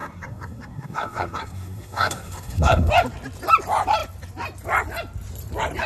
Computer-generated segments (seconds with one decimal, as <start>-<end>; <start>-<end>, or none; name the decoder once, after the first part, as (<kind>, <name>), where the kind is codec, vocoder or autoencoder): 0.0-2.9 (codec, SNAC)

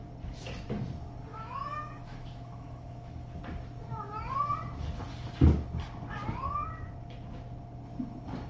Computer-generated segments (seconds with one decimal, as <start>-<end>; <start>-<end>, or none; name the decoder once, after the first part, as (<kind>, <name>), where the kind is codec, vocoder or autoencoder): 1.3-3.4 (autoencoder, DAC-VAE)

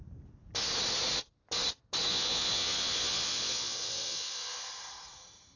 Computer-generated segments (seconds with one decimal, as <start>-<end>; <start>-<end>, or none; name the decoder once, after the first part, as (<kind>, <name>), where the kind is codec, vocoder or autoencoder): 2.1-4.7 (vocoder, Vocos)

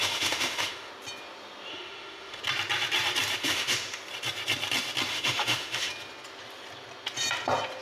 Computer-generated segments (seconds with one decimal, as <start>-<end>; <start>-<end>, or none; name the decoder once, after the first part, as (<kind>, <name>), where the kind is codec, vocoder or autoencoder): 0.0-0.9 (autoencoder, DAC-VAE); 1.7-2.4; 3.4-4.0; 5.1-5.9